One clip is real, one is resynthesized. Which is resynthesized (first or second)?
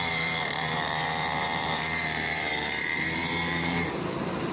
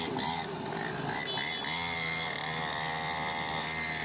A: first